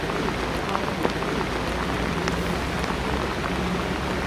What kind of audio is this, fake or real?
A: real